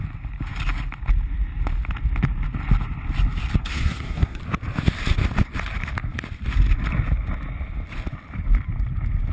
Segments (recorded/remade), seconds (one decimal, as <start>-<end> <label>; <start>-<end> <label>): 0.0-3.6 recorded; 3.6-4.4 remade; 4.4-9.3 recorded